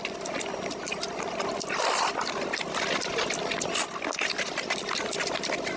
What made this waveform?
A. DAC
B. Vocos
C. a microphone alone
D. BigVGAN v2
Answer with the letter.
C